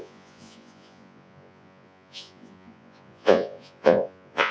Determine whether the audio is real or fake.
fake